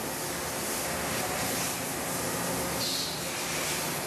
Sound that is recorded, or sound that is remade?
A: recorded